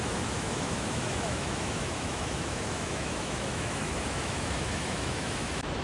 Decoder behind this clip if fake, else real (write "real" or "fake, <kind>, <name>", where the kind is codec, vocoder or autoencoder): fake, autoencoder, DAC-VAE